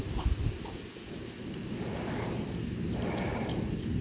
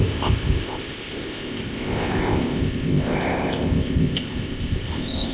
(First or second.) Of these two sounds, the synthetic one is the second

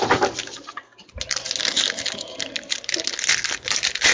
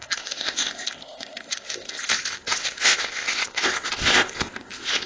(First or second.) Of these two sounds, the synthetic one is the second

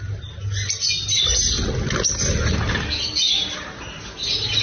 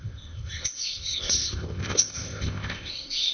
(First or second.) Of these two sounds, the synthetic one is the second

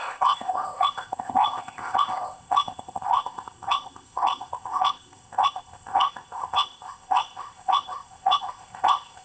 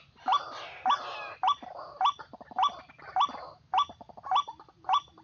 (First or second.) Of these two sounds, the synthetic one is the first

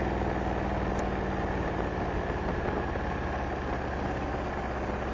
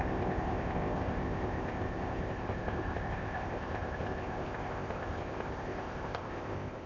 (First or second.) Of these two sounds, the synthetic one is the second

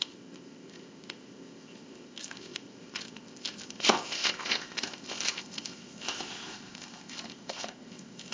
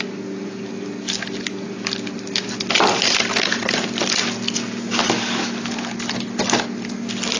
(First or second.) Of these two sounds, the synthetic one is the first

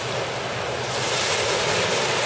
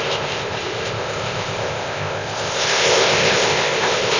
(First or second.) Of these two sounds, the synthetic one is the second